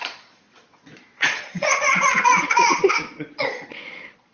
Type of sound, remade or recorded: remade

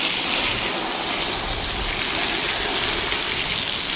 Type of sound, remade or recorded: recorded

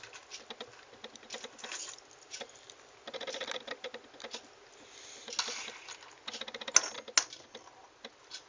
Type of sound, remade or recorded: recorded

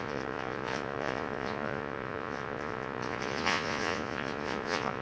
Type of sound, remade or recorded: remade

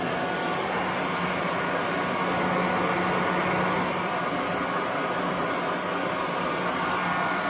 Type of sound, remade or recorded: recorded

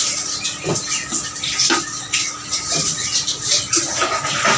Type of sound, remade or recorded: recorded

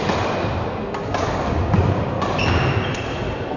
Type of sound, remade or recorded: recorded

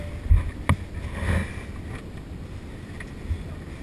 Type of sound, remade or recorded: recorded